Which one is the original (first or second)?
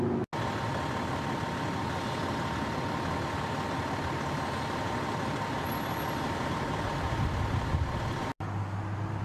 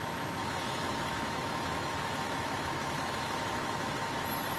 first